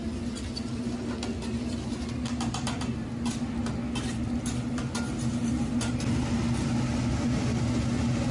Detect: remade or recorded recorded